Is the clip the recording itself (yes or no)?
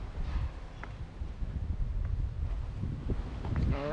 yes